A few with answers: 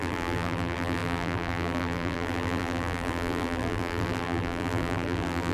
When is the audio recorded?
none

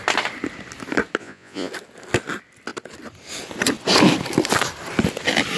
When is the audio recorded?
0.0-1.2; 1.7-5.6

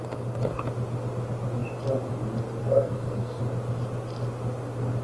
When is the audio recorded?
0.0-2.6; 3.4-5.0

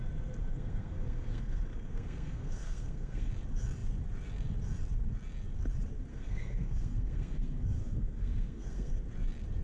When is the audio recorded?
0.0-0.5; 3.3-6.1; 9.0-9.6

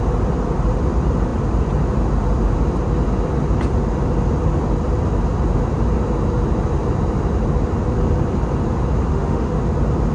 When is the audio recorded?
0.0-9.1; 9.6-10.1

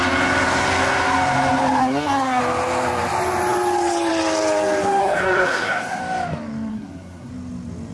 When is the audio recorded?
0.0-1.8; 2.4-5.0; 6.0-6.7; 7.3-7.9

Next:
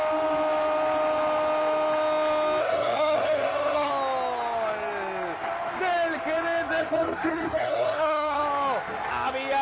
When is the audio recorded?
0.0-2.6; 3.9-6.8; 8.4-9.6

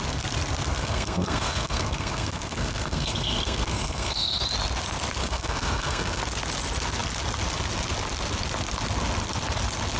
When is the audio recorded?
0.0-0.8; 4.4-5.2; 6.2-10.0